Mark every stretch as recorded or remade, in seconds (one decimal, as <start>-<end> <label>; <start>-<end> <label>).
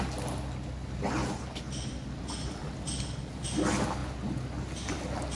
0.0-5.3 recorded